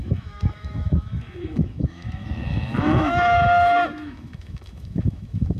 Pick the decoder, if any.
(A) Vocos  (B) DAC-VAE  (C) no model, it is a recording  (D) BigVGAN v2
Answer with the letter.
B